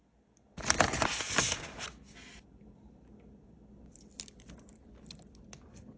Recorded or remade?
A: recorded